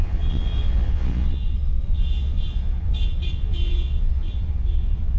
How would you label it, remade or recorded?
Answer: remade